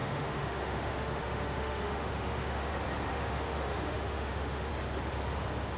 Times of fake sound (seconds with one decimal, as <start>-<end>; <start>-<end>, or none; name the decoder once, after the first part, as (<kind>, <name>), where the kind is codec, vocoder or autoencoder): 0.0-2.7 (autoencoder, DAC-VAE); 3.1-4.7